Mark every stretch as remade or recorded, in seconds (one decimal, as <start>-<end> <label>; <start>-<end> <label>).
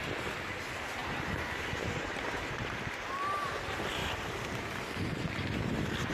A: 0.0-1.0 recorded; 1.0-2.8 remade; 2.8-4.0 recorded; 4.0-4.8 remade; 4.8-6.1 recorded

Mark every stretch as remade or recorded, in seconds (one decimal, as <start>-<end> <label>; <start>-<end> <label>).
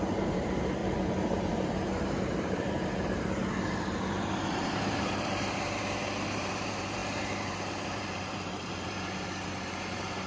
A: 0.0-0.8 remade; 0.8-1.4 recorded; 1.4-3.4 remade; 3.4-4.5 recorded; 4.5-10.3 remade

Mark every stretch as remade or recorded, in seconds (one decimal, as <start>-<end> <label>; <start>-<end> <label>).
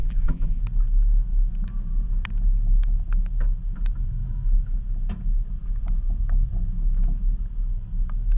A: 0.0-0.6 remade; 0.6-8.4 recorded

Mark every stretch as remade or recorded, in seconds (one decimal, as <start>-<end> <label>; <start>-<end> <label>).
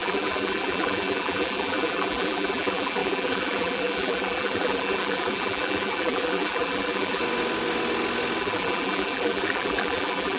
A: 0.0-7.2 remade; 7.2-8.4 recorded; 8.4-10.4 remade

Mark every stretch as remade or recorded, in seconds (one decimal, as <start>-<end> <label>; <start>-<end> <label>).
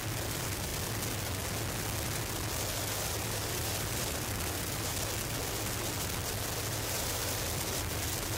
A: 0.0-0.7 remade; 0.7-2.9 recorded; 2.9-4.9 remade; 4.9-6.7 recorded; 6.7-7.2 remade; 7.2-7.8 recorded; 7.8-8.4 remade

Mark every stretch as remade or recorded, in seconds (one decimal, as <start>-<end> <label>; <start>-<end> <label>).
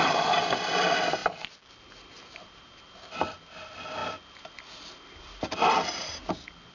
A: 0.0-6.7 recorded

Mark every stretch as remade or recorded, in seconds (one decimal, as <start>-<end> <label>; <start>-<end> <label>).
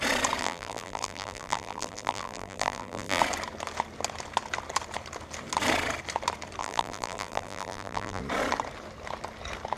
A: 0.0-0.4 recorded; 0.4-3.2 remade; 3.2-6.6 recorded; 6.6-8.2 remade; 8.2-9.8 recorded